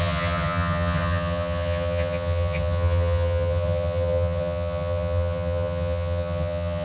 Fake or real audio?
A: fake